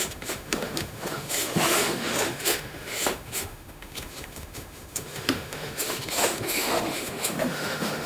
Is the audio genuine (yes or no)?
no